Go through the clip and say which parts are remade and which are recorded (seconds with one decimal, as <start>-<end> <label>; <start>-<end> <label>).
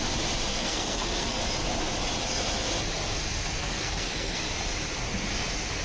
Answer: 0.0-0.5 recorded; 0.5-1.4 remade; 1.4-3.6 recorded; 3.6-4.4 remade; 4.4-5.8 recorded